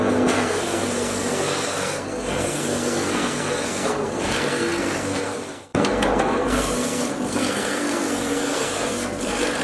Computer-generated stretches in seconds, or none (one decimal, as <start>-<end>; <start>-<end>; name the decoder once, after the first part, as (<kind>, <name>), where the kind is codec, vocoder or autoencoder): 0.0-9.6 (codec, SNAC)